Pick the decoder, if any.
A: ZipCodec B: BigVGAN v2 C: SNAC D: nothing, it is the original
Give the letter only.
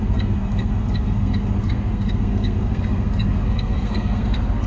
C